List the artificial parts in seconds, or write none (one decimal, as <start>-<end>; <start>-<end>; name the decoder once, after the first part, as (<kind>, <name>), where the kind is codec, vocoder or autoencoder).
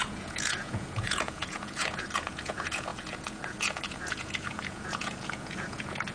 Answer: 0.0-6.1 (vocoder, Vocos)